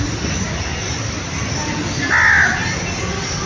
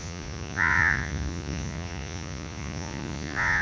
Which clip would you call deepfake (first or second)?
second